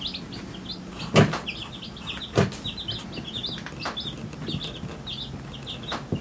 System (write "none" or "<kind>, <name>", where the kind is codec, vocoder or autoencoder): none